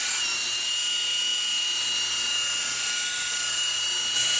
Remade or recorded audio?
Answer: recorded